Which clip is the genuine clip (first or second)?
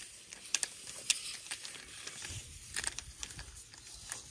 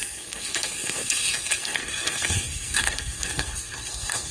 first